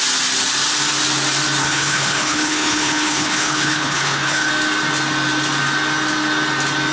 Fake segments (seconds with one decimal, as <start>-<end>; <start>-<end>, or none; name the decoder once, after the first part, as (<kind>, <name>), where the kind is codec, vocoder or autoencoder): 1.6-4.5 (codec, HILCodec)

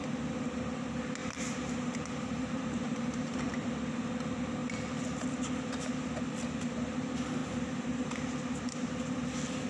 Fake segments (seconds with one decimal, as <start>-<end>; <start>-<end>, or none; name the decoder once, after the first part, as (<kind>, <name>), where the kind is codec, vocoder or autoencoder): 1.2-3.7 (vocoder, BigVGAN v2); 7.4-8.1

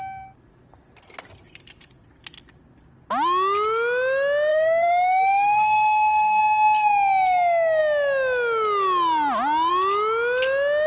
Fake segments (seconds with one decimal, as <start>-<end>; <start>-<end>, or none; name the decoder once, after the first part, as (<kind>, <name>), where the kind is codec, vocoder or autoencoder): 4.5-6.4 (codec, SNAC)

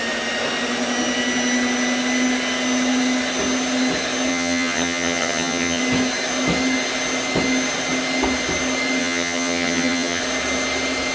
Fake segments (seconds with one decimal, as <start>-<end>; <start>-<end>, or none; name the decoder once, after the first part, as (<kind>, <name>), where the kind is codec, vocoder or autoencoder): 4.3-5.8 (vocoder, HiFi-GAN); 9.0-10.2

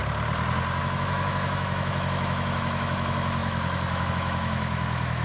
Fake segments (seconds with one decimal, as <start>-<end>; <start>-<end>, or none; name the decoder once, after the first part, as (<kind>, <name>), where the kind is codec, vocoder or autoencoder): 0.8-5.2 (autoencoder, DAC-VAE)

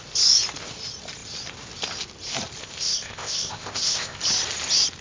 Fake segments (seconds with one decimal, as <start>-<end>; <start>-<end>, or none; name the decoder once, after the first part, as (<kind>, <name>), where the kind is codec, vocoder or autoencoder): 2.6-4.2 (codec, ZipCodec)

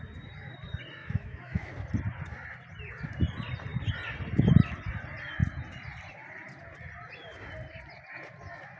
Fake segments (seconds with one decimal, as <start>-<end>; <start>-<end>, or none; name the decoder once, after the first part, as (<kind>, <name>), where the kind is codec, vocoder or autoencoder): 1.0-1.7 (autoencoder, DAC-VAE)